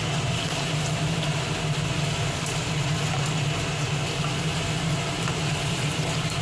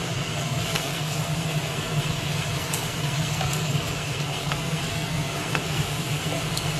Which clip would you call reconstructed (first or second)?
second